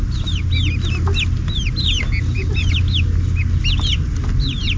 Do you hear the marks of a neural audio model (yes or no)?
no